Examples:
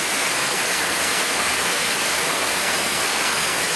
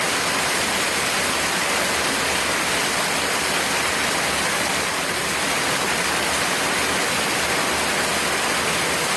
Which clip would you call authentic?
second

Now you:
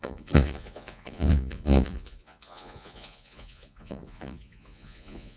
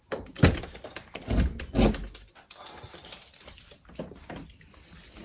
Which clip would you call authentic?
second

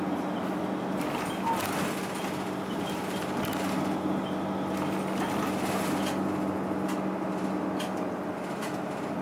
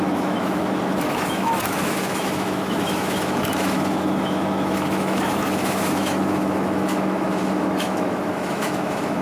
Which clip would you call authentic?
first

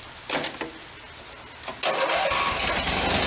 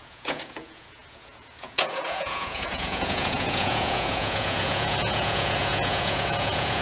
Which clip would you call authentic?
first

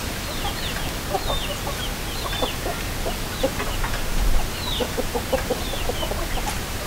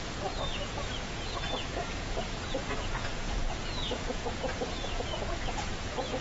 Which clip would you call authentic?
first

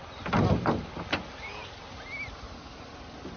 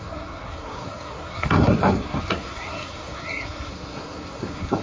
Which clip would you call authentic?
first